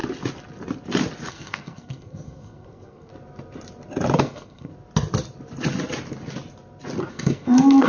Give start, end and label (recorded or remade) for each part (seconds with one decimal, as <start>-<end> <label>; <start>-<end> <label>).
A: 0.0-1.3 recorded; 1.3-3.1 remade; 3.1-4.2 recorded; 4.2-4.7 remade; 4.7-7.1 recorded; 7.1-7.9 remade